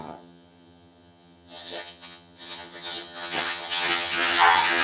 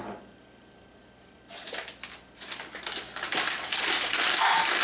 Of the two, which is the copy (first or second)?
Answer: first